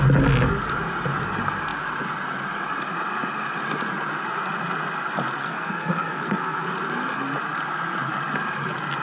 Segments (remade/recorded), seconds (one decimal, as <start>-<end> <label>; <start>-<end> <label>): 0.0-5.4 recorded; 5.4-6.7 remade; 6.7-9.0 recorded